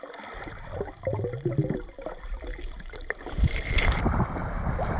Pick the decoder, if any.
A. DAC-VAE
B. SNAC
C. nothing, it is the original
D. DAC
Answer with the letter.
C